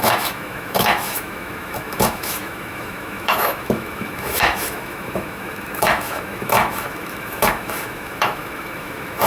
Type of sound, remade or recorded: remade